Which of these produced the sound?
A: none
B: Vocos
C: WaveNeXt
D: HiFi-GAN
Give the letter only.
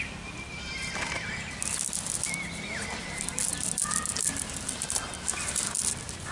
A